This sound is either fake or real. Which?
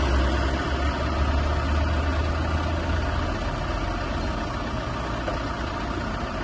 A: real